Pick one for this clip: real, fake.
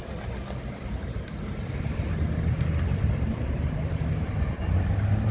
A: real